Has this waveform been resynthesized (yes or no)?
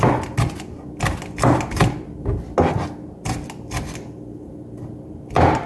no